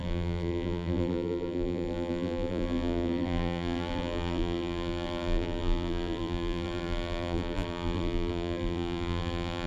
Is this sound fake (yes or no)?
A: yes